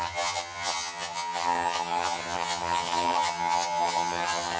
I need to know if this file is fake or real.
fake